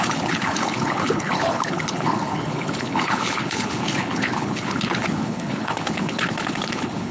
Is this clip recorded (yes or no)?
no